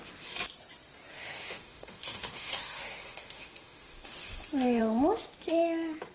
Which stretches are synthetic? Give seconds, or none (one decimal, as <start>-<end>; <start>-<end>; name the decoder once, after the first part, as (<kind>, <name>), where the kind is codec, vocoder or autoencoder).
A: 1.1-4.8 (autoencoder, DAC-VAE)